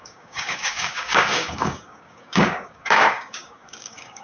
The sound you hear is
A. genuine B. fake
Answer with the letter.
B